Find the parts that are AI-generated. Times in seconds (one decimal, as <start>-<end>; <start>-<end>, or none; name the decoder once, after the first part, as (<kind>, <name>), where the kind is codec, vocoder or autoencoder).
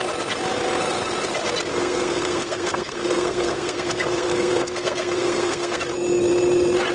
1.7-5.8 (codec, SNAC)